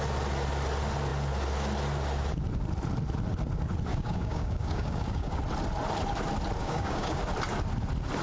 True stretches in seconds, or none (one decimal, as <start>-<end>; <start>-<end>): 0.0-3.9; 5.4-6.6; 7.2-8.2